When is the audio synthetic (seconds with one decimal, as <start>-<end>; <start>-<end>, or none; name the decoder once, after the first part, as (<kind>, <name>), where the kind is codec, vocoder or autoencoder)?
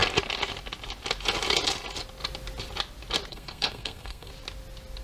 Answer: 3.3-4.3 (codec, SNAC)